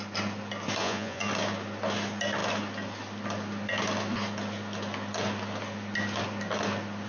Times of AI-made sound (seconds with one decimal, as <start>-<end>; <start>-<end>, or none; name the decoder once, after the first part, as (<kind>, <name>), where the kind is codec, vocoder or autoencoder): 0.8-1.3 (vocoder, Vocos)